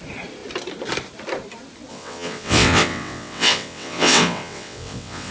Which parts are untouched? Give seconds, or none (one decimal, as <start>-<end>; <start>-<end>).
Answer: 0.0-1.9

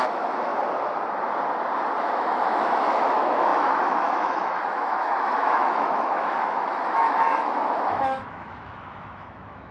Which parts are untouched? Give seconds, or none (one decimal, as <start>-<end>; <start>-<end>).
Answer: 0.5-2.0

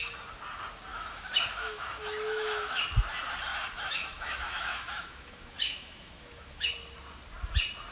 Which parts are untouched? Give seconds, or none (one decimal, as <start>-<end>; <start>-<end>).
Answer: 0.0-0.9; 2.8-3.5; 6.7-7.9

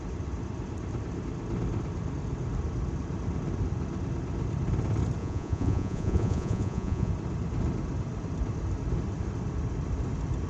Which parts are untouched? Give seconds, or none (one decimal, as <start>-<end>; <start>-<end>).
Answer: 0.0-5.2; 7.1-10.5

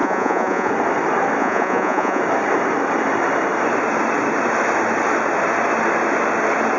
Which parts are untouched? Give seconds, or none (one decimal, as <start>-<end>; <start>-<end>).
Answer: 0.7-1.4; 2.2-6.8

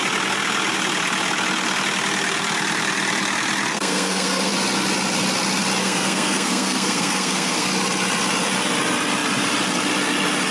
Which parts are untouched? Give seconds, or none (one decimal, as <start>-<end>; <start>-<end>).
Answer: 0.0-3.7; 4.5-5.8; 7.7-10.5

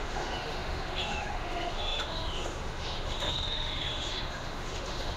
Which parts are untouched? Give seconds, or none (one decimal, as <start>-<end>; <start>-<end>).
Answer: none